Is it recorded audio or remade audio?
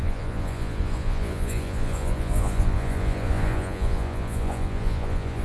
remade